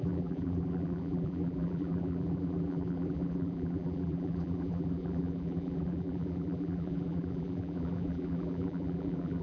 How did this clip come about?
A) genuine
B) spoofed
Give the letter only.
B